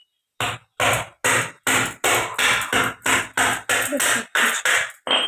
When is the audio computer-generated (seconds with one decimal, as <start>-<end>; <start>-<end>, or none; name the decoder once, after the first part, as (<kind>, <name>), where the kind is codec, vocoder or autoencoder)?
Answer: none